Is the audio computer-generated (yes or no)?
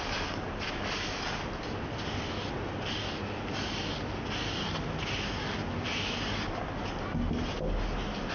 no